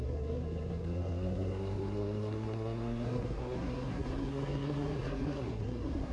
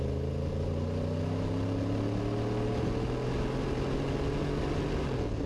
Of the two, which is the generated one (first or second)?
first